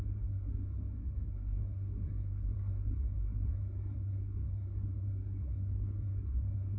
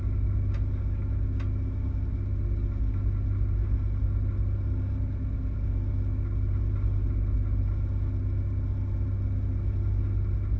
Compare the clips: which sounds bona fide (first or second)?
second